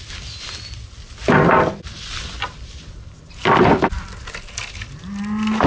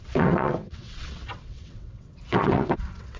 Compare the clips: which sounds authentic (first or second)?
first